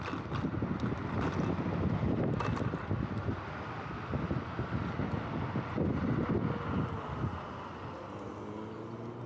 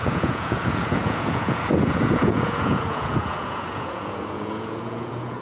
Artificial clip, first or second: second